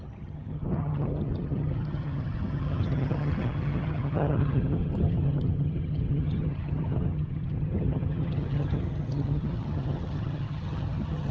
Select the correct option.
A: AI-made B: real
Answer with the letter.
A